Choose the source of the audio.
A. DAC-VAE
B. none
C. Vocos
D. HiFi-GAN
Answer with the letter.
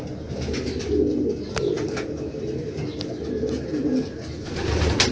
B